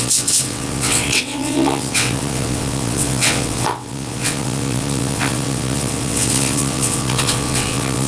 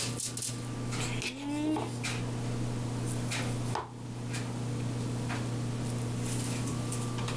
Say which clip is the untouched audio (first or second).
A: second